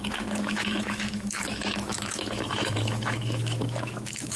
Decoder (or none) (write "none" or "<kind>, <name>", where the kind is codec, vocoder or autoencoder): autoencoder, DAC-VAE